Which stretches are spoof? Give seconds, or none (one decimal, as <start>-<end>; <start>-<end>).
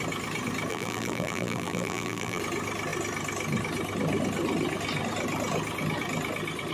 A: 0.7-2.4